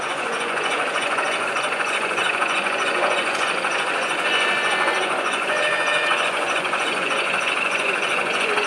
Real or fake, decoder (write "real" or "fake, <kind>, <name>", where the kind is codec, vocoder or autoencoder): fake, vocoder, Vocos